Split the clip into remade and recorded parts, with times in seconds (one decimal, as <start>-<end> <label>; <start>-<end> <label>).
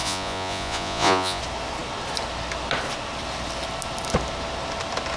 0.0-1.4 remade; 1.4-5.2 recorded